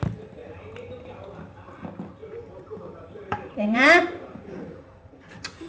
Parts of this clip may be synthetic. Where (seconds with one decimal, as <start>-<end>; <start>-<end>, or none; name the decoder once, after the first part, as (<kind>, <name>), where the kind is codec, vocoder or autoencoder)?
0.4-1.1 (vocoder, BigVGAN v2); 2.2-5.7